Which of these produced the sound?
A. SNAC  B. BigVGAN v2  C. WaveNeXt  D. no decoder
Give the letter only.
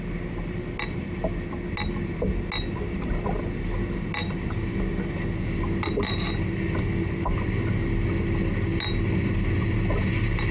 D